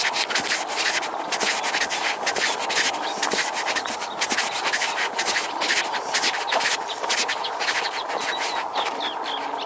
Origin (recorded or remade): recorded